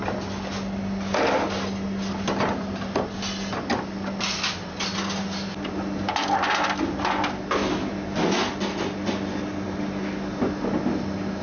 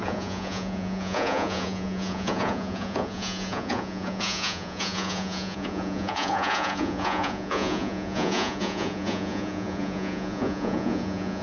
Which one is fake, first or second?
second